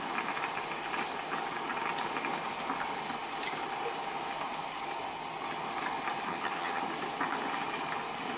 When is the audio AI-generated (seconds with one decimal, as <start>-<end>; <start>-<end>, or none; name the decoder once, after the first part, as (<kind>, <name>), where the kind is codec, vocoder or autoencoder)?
6.3-6.8 (vocoder, HiFi-GAN)